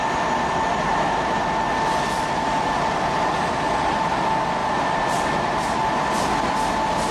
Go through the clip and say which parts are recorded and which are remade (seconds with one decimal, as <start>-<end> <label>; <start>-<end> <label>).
0.0-0.9 recorded; 0.9-1.6 remade; 1.6-4.6 recorded; 4.6-5.5 remade; 5.5-7.1 recorded